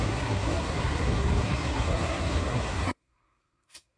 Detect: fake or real fake